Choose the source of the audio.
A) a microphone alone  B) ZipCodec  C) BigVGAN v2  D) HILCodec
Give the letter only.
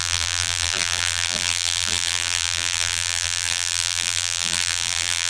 C